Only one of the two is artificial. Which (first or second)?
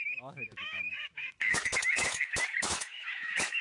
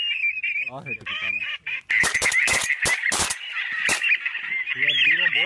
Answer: first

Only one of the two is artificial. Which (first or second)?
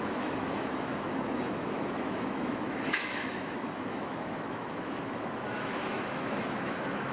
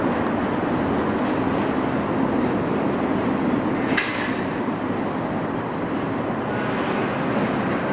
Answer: first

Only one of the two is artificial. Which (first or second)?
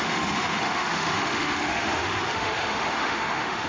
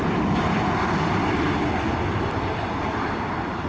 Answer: first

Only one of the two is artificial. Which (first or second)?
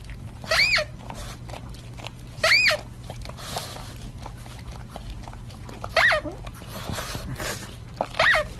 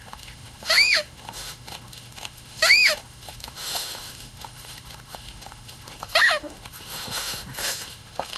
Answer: second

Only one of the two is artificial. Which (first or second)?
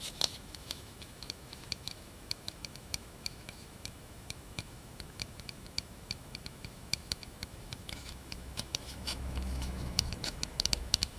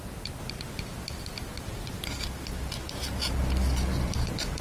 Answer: first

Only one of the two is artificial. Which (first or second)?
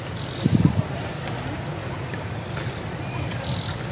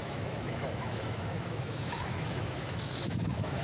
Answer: second